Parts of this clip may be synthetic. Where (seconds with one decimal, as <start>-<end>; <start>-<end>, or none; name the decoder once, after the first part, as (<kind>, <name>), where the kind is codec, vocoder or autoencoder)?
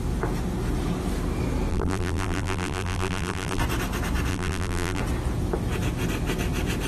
1.7-3.6 (vocoder, BigVGAN v2); 4.3-5.0